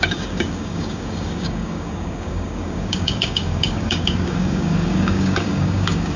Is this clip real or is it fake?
fake